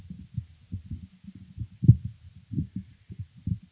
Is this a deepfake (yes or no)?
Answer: no